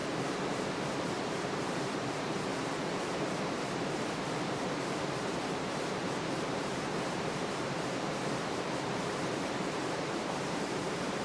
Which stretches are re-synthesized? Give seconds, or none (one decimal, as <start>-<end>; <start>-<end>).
1.0-2.5; 3.0-6.7; 7.2-11.2

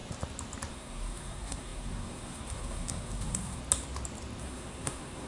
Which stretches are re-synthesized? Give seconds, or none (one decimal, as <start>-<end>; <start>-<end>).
0.7-3.6; 4.4-5.3

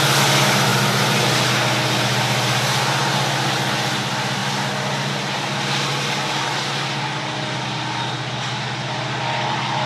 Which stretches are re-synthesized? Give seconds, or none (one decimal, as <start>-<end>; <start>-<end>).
none

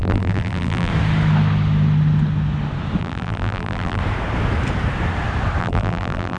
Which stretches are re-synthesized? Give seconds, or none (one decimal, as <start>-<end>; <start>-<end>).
0.0-0.9; 3.0-4.0; 5.6-6.4

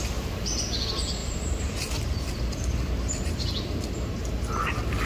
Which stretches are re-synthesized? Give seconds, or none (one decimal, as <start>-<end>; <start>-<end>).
1.2-4.1

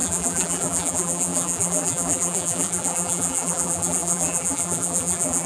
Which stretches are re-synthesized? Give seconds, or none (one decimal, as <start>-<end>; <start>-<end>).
0.0-5.5

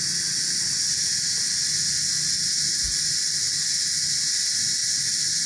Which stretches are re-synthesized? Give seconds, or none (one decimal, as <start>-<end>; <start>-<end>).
none

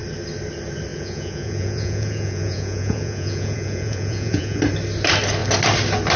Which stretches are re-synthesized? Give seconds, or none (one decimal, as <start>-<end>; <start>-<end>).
0.9-4.6